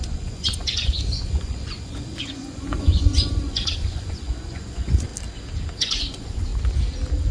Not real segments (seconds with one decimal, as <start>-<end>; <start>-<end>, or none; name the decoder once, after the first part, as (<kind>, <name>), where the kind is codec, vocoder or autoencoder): 0.0-5.1 (vocoder, Vocos); 5.8-6.5